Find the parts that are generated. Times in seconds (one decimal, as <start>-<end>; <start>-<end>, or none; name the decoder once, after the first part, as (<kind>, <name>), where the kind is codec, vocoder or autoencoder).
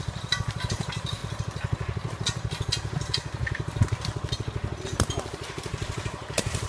0.0-1.2 (vocoder, BigVGAN v2); 4.8-6.7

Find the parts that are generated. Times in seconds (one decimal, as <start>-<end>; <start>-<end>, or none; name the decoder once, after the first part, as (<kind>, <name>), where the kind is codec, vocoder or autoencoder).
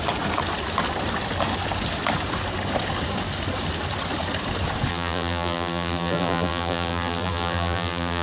4.9-8.2 (vocoder, BigVGAN v2)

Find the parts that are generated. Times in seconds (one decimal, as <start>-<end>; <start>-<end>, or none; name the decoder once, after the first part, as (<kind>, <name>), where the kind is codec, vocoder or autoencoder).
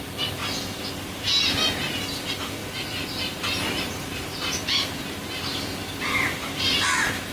2.6-6.8 (vocoder, BigVGAN v2)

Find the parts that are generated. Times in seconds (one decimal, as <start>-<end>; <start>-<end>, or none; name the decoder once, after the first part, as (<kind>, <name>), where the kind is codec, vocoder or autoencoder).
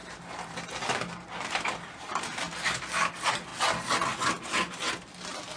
0.0-2.5 (vocoder, BigVGAN v2)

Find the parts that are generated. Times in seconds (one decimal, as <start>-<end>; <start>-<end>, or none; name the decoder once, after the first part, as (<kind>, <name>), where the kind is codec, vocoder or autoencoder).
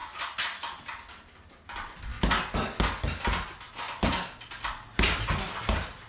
none